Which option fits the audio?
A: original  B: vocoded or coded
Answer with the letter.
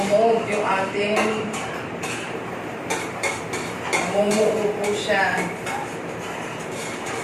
B